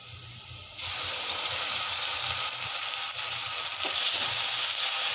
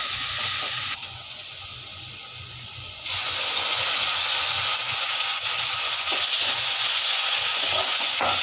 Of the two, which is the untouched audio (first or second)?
first